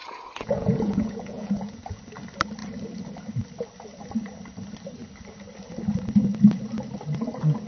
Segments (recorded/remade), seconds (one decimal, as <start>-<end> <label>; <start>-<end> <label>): 0.0-2.0 remade; 2.0-7.7 recorded